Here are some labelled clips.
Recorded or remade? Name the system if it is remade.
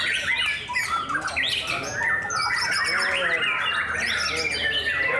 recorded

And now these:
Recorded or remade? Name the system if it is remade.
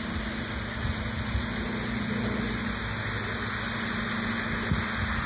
recorded